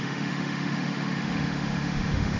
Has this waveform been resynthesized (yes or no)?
yes